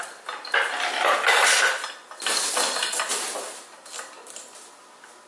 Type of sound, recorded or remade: recorded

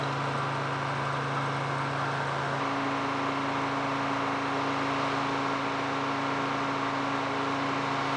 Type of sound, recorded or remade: recorded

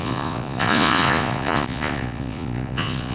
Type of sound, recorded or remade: remade